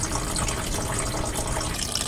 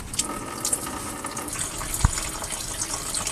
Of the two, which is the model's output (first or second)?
second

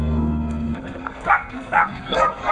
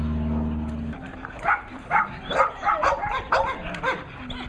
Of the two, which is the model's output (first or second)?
first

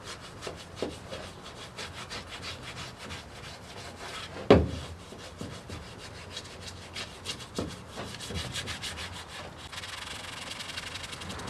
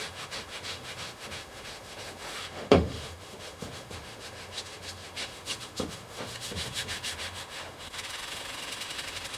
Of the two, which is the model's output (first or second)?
second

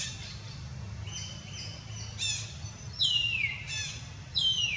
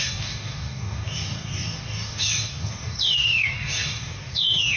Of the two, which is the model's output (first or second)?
second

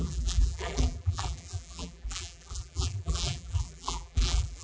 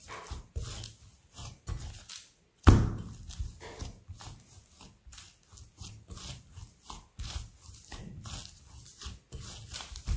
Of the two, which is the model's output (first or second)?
first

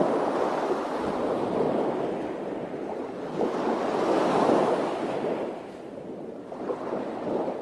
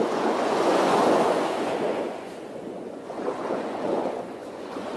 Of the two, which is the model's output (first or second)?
second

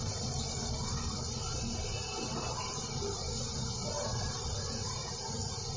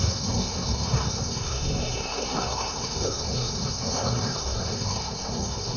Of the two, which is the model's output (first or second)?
second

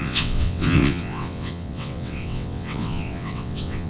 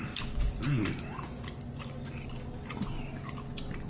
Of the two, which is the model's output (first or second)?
first